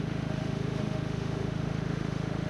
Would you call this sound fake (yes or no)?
yes